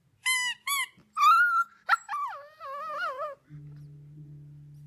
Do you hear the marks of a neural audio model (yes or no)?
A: no